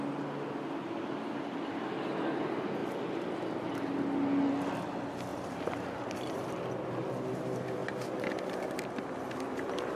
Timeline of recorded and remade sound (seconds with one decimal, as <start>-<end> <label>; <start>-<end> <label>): 0.0-5.3 recorded; 5.3-6.5 remade; 6.5-10.0 recorded